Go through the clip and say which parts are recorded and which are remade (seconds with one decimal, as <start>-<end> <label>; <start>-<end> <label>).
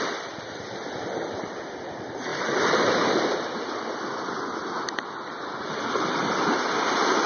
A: 0.0-7.3 recorded